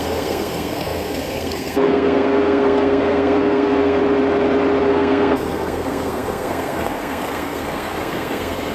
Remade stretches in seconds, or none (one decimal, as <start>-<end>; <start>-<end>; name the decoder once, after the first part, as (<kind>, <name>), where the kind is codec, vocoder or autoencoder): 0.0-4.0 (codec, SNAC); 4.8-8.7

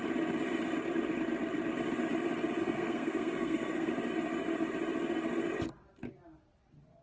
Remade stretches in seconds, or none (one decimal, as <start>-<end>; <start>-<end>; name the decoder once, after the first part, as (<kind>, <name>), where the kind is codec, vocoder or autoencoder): 2.6-3.9 (codec, SNAC)

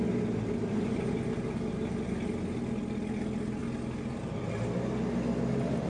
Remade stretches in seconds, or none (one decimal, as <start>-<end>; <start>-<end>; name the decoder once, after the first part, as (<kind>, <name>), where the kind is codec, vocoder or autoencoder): none